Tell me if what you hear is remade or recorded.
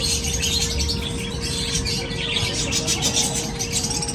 recorded